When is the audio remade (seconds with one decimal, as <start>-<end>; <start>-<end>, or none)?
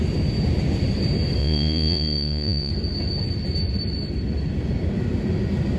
1.4-2.7